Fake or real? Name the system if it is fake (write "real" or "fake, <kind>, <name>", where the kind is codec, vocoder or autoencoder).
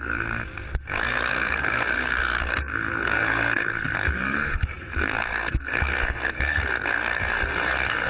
fake, codec, SNAC